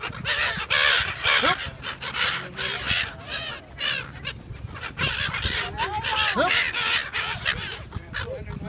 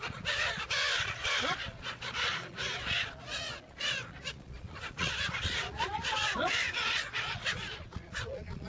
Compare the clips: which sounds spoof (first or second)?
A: second